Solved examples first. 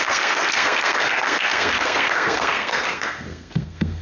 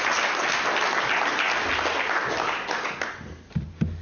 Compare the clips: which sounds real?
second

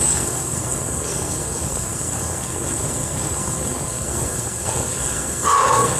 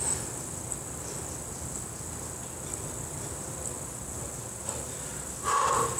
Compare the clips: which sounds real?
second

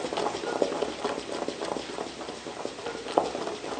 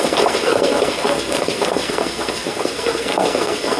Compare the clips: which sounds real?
first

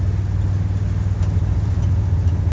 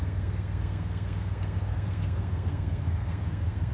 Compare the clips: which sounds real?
first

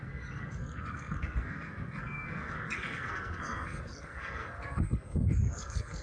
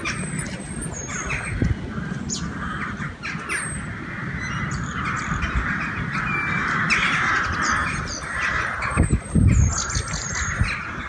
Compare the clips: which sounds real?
second